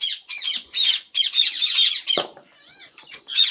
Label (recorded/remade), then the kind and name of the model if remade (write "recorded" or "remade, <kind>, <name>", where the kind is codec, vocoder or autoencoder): remade, vocoder, Vocos